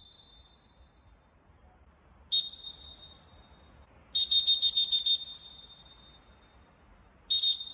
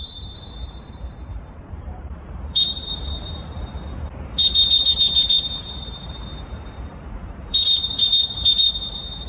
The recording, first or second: first